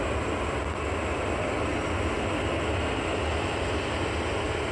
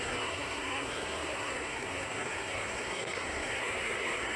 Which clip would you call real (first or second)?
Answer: first